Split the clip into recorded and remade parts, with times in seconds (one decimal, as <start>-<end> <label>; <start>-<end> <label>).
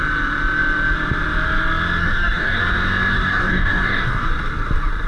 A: 0.0-2.0 recorded; 2.0-2.6 remade; 2.6-3.1 recorded; 3.1-4.3 remade; 4.3-5.1 recorded